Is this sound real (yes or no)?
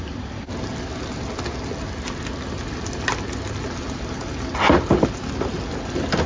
yes